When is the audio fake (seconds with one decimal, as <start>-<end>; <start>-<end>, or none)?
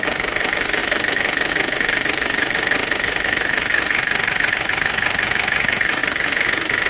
0.0-6.9